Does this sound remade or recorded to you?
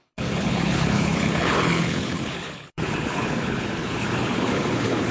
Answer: remade